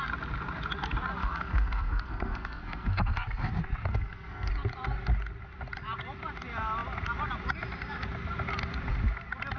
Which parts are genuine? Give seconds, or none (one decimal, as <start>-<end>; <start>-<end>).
0.0-1.2; 3.5-3.9; 4.5-9.6